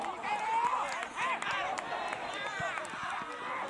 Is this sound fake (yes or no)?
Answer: no